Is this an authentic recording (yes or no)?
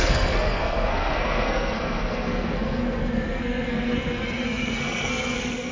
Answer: no